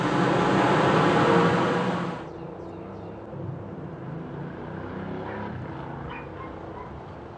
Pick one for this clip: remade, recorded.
recorded